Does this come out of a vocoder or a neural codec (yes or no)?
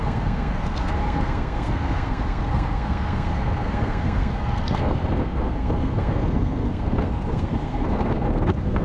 yes